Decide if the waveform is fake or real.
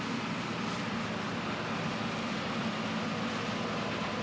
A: real